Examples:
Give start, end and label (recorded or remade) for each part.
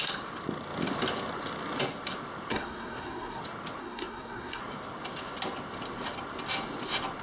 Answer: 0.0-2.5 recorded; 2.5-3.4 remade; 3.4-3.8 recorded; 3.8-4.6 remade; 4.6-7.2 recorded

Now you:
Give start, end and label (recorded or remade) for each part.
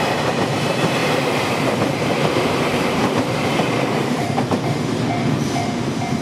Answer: 0.0-6.2 remade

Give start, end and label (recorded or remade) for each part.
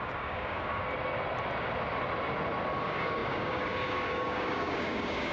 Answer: 0.0-0.8 remade; 0.8-2.8 recorded; 2.8-5.3 remade